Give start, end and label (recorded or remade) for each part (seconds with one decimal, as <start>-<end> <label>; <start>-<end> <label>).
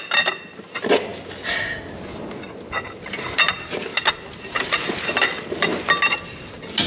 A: 0.0-6.9 recorded